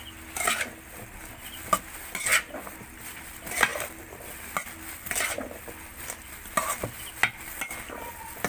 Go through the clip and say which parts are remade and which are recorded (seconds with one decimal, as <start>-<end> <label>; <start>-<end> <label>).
0.0-8.5 recorded